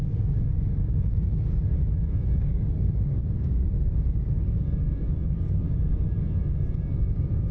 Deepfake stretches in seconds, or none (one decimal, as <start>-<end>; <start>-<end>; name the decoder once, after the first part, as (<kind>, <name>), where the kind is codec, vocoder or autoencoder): 0.0-1.7 (codec, DAC); 2.4-6.2; 7.1-7.5